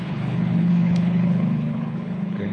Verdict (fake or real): fake